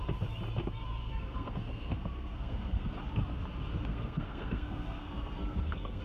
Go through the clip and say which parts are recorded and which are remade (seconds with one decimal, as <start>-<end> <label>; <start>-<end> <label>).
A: 0.0-1.0 recorded; 1.0-2.9 remade; 2.9-3.9 recorded; 3.9-6.0 remade